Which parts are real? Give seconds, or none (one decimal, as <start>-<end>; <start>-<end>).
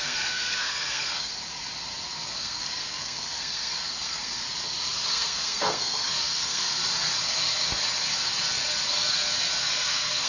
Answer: 1.3-2.3; 4.4-5.1; 6.8-9.6